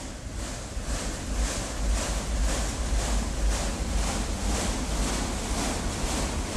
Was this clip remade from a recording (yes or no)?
no